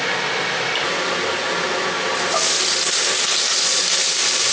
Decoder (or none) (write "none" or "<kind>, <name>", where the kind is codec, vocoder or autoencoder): none